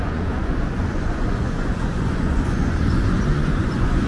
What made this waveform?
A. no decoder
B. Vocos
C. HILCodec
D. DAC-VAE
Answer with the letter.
B